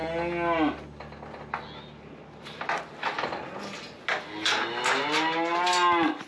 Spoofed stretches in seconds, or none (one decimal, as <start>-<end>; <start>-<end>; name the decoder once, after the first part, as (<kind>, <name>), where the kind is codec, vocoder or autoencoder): none